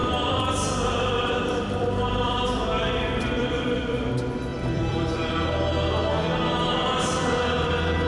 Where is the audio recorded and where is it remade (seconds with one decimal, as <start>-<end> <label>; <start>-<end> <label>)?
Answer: 0.0-4.1 remade; 4.1-4.5 recorded; 4.5-5.3 remade; 5.3-8.1 recorded